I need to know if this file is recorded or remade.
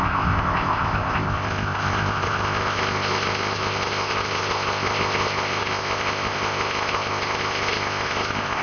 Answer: remade